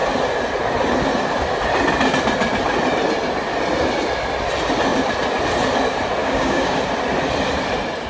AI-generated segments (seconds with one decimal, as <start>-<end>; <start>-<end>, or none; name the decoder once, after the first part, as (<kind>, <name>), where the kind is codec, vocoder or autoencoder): 6.2-6.8 (codec, DAC)